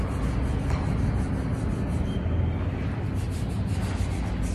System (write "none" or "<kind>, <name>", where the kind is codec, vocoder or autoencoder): none